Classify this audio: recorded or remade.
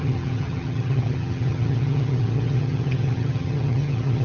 remade